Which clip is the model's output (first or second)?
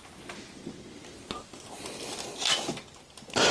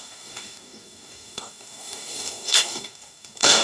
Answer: second